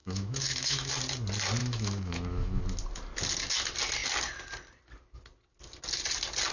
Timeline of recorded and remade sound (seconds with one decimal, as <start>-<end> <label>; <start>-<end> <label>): 0.0-0.9 remade; 0.9-1.6 recorded; 1.6-2.6 remade; 2.6-6.5 recorded